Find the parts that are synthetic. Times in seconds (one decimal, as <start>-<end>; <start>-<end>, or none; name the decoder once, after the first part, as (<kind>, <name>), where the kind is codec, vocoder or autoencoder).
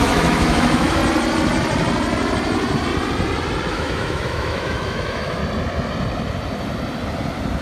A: 0.0-1.0 (autoencoder, DAC-VAE); 3.7-5.4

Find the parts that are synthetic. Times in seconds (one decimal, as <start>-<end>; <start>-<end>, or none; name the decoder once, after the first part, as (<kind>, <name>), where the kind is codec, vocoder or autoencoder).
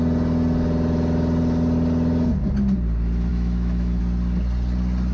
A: 3.3-4.0 (autoencoder, DAC-VAE)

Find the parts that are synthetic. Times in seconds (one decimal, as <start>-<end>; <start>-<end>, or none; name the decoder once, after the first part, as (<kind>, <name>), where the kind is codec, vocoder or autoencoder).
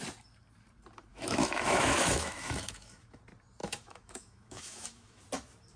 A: 1.1-3.2 (autoencoder, DAC-VAE); 3.6-5.2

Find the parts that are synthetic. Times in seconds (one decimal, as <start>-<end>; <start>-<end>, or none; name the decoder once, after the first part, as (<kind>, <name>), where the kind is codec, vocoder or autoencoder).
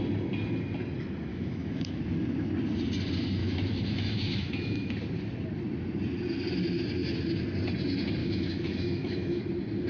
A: 1.3-2.0 (autoencoder, DAC-VAE); 3.4-4.9; 8.2-9.4